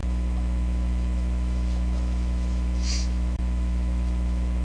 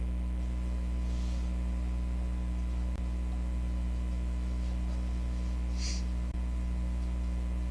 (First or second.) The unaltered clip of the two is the second